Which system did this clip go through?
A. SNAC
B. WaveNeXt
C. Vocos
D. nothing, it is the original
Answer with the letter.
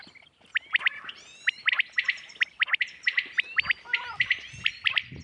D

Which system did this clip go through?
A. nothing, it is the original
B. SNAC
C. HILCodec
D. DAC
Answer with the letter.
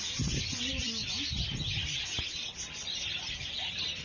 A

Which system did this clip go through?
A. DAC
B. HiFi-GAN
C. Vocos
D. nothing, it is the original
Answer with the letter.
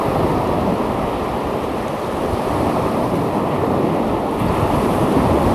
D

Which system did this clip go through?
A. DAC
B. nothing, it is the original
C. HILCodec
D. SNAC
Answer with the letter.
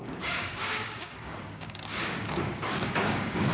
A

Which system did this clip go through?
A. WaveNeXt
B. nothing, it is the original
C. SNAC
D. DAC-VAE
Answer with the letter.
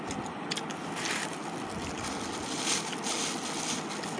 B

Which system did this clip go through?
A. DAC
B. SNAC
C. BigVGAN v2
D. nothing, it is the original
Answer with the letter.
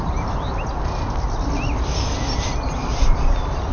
D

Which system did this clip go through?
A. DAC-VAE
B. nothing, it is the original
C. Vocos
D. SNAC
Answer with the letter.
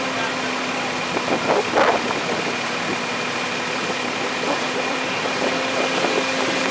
B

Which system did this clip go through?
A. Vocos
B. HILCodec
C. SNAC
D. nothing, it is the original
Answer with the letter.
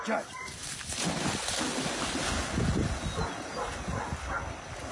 D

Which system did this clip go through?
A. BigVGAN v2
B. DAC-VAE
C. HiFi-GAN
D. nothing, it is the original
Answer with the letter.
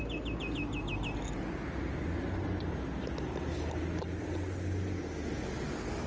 D